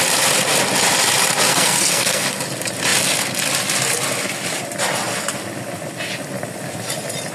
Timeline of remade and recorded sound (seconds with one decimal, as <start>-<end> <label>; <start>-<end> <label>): 0.0-1.5 recorded; 1.5-2.4 remade; 2.4-7.3 recorded